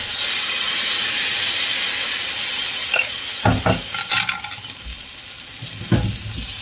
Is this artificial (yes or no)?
no